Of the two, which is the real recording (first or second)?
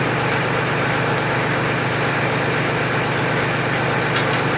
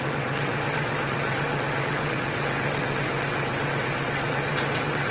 first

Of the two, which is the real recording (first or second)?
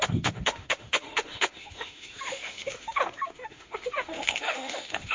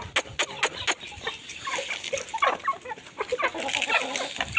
second